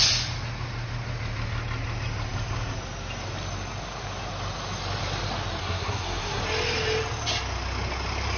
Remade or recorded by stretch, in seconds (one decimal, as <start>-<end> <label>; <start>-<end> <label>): 0.0-5.6 recorded; 5.6-6.4 remade; 6.4-8.4 recorded